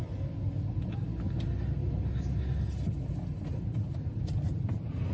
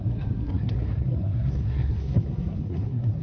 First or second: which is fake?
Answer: second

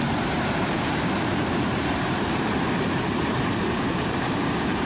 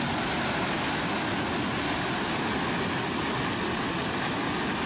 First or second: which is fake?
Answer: first